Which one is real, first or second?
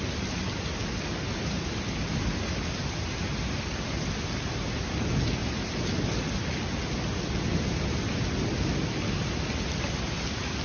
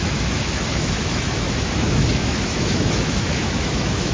first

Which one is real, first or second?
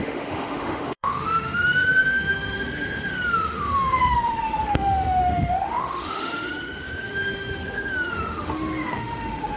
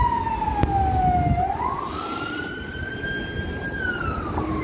second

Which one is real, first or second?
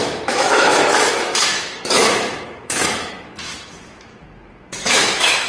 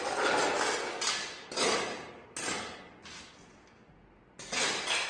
second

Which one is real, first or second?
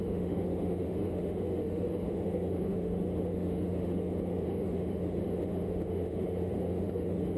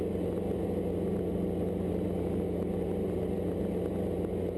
second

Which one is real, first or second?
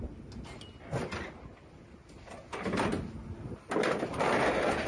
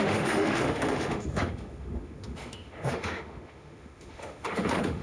first